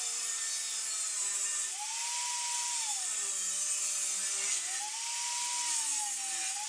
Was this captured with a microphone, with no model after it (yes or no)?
yes